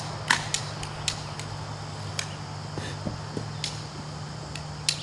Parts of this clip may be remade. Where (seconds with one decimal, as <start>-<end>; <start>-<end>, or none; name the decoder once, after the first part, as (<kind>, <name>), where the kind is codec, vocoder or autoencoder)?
none